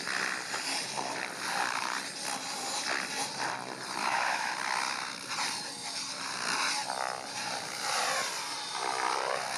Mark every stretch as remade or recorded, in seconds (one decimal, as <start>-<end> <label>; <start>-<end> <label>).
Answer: 0.0-4.0 recorded; 4.0-4.5 remade; 4.5-9.6 recorded